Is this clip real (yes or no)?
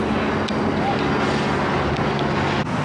yes